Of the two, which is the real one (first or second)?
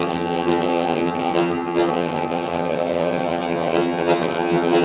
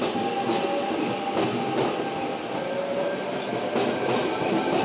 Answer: second